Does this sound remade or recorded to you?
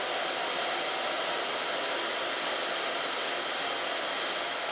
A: recorded